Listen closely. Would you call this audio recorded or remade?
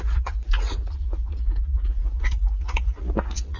remade